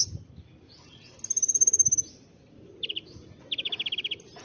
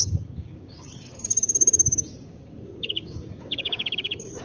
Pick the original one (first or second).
first